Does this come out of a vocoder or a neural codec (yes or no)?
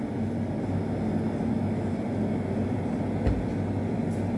no